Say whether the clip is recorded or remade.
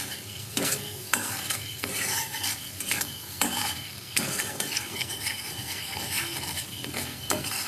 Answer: remade